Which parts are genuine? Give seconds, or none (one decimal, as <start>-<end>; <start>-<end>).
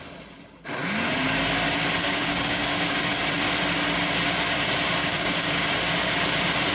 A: 0.0-2.0; 3.2-5.0; 5.7-6.7